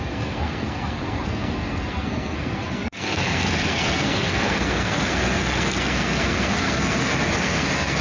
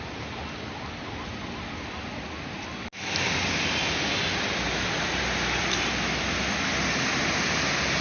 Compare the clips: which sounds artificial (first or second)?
first